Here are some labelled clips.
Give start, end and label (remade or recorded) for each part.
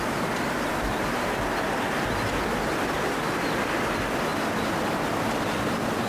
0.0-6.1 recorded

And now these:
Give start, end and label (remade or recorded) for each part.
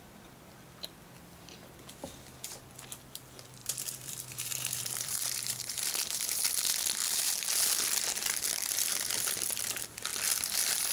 0.0-3.6 recorded; 3.6-5.9 remade; 5.9-7.0 recorded; 7.0-7.5 remade; 7.5-10.9 recorded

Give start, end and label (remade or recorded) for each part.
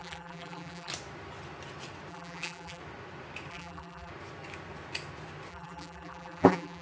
0.0-0.9 remade; 0.9-2.1 recorded; 2.1-2.8 remade; 2.8-3.5 recorded; 3.5-4.1 remade; 4.1-5.5 recorded; 5.5-6.8 remade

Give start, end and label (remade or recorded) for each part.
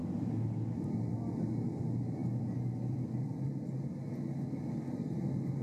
0.0-2.2 recorded; 2.2-4.1 remade; 4.1-5.6 recorded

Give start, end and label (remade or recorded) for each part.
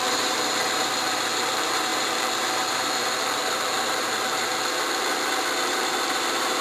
0.0-4.5 remade; 4.5-5.7 recorded; 5.7-6.6 remade